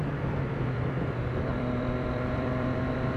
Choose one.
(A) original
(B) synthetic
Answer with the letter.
B